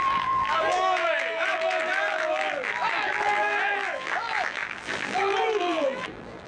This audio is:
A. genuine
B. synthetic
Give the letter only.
B